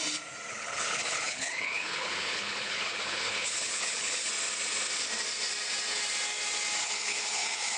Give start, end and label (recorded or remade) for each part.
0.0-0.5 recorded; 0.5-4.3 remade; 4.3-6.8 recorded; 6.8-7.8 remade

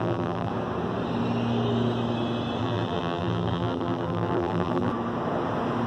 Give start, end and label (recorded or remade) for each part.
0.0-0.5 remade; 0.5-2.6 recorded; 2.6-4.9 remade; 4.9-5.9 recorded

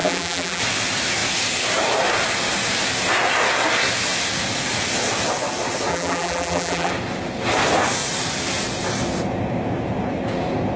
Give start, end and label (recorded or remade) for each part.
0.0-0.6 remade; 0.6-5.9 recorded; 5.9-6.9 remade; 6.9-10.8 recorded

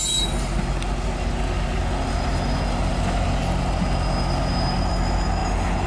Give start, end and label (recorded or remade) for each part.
0.0-5.9 recorded

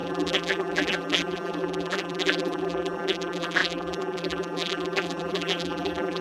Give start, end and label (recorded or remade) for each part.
0.0-6.2 remade

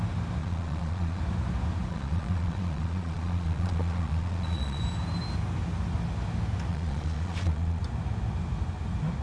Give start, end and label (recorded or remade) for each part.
0.0-0.4 recorded; 0.4-1.2 remade; 1.2-1.9 recorded; 1.9-4.8 remade; 4.8-6.7 recorded; 6.7-7.8 remade; 7.8-9.2 recorded